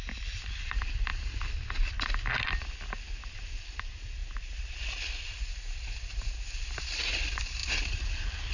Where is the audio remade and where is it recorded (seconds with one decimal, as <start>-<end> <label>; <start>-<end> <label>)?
0.0-8.5 recorded